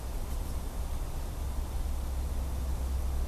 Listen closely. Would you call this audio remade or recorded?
recorded